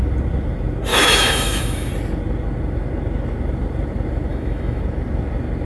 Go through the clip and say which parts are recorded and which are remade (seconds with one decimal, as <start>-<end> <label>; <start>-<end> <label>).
0.0-0.9 recorded; 0.9-1.9 remade; 1.9-4.3 recorded; 4.3-4.8 remade; 4.8-5.6 recorded